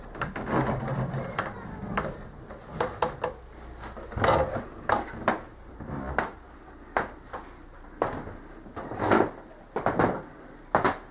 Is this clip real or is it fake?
real